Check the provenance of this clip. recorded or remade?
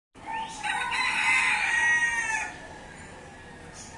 recorded